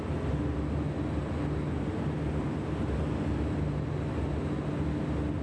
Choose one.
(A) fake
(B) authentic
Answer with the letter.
B